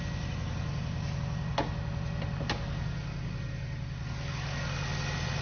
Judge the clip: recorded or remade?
recorded